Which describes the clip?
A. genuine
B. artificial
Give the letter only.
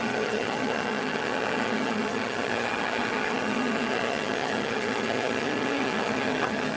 B